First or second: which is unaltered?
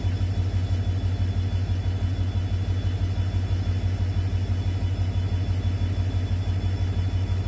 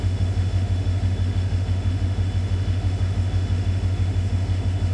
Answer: first